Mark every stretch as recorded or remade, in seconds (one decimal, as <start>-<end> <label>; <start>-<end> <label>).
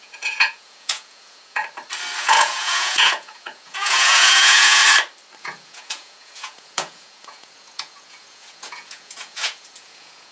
0.0-1.6 remade; 1.6-2.2 recorded; 2.2-4.8 remade; 4.8-5.4 recorded; 5.4-10.3 remade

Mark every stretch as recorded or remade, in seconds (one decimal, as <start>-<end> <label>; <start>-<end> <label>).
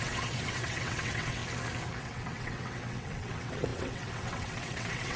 0.0-1.4 remade; 1.4-2.0 recorded; 2.0-5.2 remade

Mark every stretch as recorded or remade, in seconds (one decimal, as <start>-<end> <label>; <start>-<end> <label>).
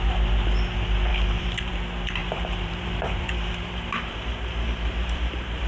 0.0-1.1 recorded; 1.1-1.7 remade; 1.7-2.2 recorded; 2.2-5.7 remade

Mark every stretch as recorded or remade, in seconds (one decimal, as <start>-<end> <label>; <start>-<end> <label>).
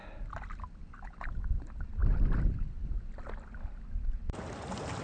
0.0-5.0 recorded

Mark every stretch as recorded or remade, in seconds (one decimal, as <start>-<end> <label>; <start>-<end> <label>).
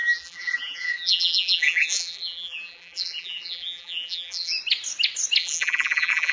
0.0-4.5 remade; 4.5-5.4 recorded; 5.4-6.3 remade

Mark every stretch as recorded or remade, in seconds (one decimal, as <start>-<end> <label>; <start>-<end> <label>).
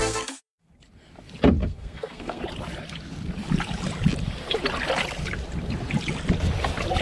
0.0-0.7 remade; 0.7-1.6 recorded; 1.6-2.4 remade; 2.4-7.0 recorded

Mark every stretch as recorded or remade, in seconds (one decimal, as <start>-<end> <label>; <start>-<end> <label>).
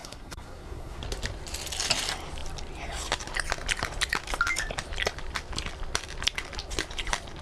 0.0-1.0 remade; 1.0-7.4 recorded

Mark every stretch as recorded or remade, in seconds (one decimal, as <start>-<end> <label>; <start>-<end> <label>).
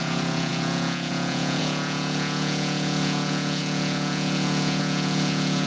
0.0-5.7 remade